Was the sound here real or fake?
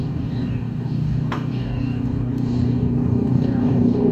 fake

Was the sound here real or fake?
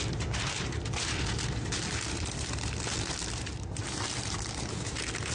real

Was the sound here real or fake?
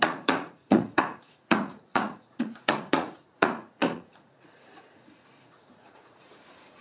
fake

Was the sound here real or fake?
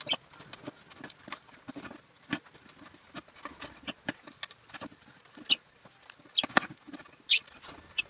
real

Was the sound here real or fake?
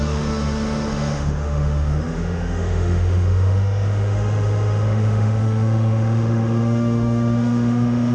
fake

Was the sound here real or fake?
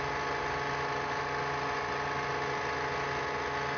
real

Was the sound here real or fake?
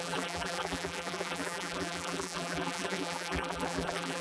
fake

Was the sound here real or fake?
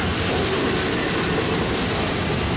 real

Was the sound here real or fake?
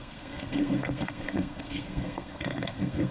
fake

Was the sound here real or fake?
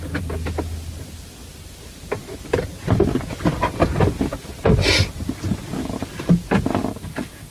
real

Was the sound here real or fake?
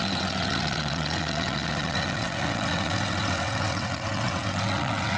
fake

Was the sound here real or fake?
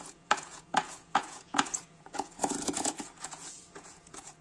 fake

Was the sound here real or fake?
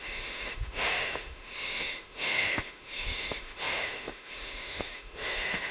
fake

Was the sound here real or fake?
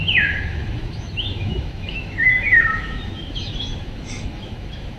fake